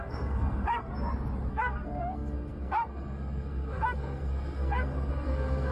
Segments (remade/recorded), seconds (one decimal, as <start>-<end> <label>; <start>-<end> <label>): 0.0-0.9 remade; 0.9-1.5 recorded; 1.5-5.7 remade